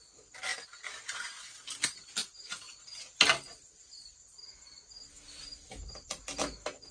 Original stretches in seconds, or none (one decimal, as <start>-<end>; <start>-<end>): 0.0-6.9